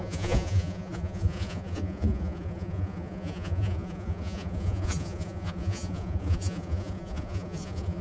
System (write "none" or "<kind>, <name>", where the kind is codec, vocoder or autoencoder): vocoder, Vocos